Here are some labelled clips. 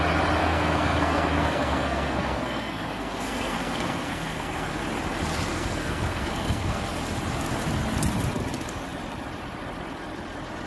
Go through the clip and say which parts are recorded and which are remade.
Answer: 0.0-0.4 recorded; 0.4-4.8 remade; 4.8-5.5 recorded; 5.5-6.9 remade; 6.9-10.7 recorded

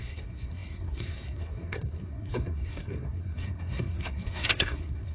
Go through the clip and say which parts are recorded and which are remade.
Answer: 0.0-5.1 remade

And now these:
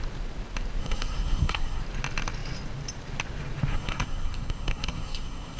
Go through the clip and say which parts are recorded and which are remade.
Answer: 0.0-0.8 recorded; 0.8-1.8 remade; 1.8-3.7 recorded; 3.7-5.6 remade

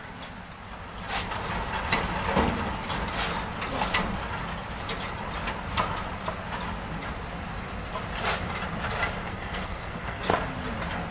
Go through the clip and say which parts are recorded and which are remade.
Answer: 0.0-9.2 recorded; 9.2-10.3 remade; 10.3-11.1 recorded